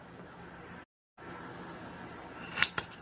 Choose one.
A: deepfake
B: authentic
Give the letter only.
B